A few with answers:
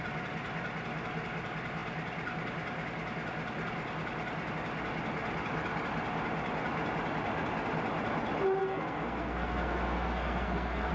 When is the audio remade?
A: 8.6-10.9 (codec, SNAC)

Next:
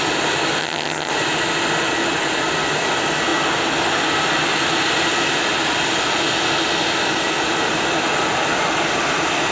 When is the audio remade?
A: 0.6-1.1 (vocoder, HiFi-GAN)